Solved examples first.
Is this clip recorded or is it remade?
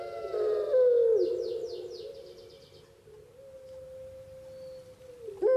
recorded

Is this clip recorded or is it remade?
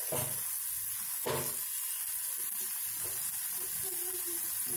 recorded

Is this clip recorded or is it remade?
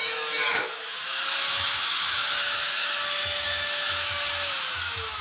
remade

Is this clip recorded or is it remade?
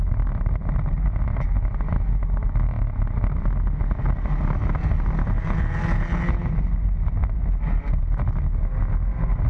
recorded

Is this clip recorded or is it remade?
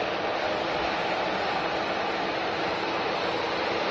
recorded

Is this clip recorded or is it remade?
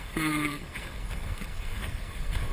remade